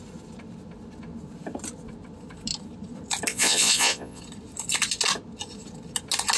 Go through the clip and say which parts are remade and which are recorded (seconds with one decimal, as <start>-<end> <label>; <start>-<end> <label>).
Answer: 0.0-3.3 recorded; 3.3-4.2 remade; 4.2-6.4 recorded